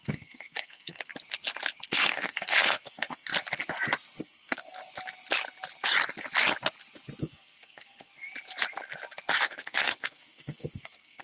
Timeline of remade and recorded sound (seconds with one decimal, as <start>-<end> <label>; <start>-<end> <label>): 0.0-1.1 remade; 1.1-1.9 recorded; 1.9-3.3 remade; 3.3-4.2 recorded; 4.2-4.8 remade; 4.8-7.2 recorded; 7.2-8.1 remade; 8.1-9.4 recorded; 9.4-11.2 remade